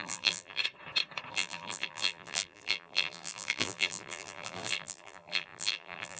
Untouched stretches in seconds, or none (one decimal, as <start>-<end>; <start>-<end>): 0.6-1.3